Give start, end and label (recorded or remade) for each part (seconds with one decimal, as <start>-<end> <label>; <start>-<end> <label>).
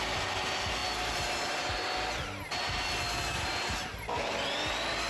0.0-5.1 recorded